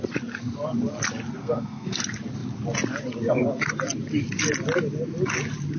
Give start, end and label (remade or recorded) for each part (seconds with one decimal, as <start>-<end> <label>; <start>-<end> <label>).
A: 0.0-1.4 recorded; 1.4-2.0 remade; 2.0-5.8 recorded